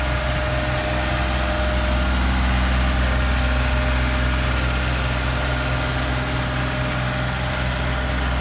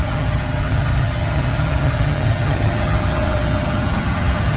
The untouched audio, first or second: first